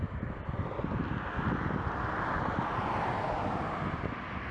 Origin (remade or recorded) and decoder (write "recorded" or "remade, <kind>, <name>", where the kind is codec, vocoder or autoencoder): recorded